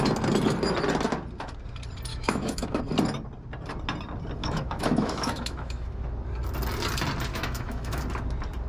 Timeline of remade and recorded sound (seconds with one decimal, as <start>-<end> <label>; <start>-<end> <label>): 0.0-2.1 recorded; 2.1-2.8 remade; 2.8-4.4 recorded; 4.4-6.0 remade; 6.0-7.3 recorded; 7.3-8.0 remade; 8.0-8.7 recorded